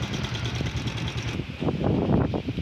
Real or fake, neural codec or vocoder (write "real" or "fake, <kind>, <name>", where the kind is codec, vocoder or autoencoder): fake, vocoder, BigVGAN v2